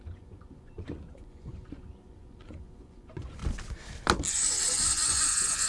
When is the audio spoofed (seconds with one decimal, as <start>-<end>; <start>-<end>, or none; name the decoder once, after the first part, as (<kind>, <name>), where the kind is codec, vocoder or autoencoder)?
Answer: 0.0-3.4 (vocoder, Vocos); 4.3-5.7